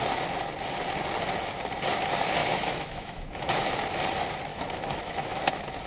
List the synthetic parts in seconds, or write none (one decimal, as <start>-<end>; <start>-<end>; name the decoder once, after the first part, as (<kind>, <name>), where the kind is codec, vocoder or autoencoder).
2.4-3.7 (autoencoder, DAC-VAE); 4.5-5.9